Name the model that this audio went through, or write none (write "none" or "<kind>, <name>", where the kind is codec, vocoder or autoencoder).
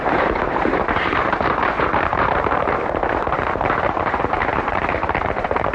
vocoder, BigVGAN v2